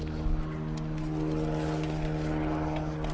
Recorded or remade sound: recorded